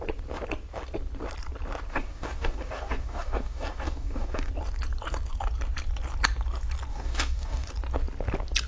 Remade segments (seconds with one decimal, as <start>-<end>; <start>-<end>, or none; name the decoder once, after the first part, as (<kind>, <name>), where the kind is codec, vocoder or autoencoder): 1.9-4.5 (codec, DAC); 6.9-7.7